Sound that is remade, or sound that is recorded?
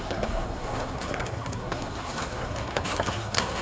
remade